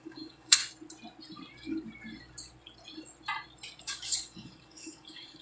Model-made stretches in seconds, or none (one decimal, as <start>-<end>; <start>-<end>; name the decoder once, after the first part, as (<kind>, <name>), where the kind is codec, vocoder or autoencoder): 0.0-0.6 (codec, DAC); 3.8-5.4